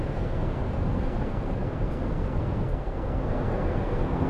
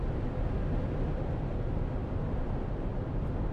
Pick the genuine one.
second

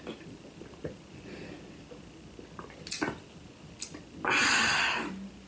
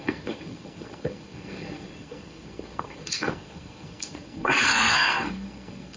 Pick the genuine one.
first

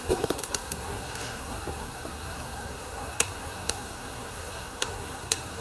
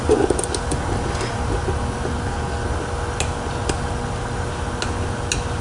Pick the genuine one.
second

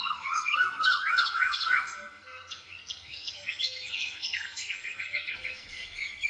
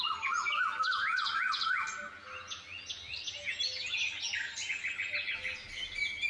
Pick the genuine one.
second